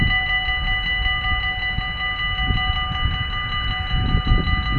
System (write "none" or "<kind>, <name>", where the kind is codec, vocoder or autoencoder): none